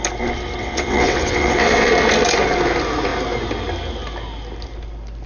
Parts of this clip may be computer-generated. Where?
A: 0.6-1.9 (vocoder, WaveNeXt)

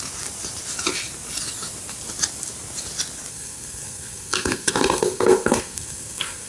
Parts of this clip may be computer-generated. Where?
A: 3.3-6.5 (codec, SNAC)

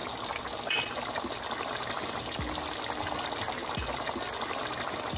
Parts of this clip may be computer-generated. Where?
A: none

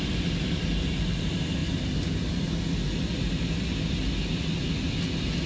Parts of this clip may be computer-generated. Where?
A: none

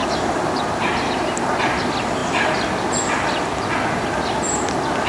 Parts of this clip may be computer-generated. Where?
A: 0.0-1.8 (vocoder, BigVGAN v2)

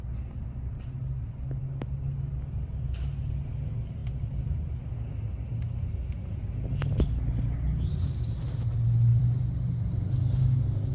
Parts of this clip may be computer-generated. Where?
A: 9.1-10.0 (vocoder, BigVGAN v2)